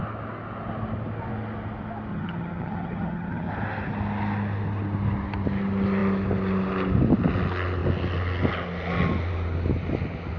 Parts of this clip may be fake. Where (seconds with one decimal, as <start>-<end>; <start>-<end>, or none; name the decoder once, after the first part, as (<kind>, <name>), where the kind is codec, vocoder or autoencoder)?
2.1-3.5 (vocoder, HiFi-GAN)